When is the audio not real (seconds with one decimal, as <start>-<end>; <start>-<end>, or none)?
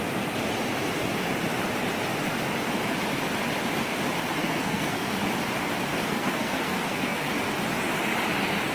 4.4-5.2; 5.9-7.3